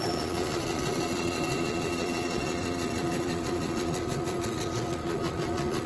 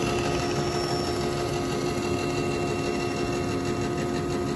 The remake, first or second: first